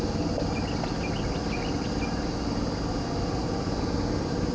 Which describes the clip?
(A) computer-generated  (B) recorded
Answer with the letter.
B